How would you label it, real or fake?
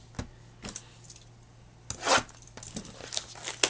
real